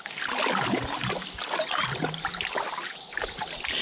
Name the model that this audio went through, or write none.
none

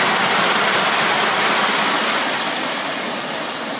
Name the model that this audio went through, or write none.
vocoder, BigVGAN v2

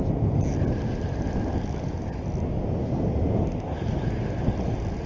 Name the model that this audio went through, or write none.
none